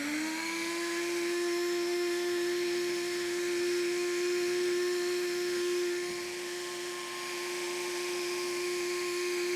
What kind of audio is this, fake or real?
fake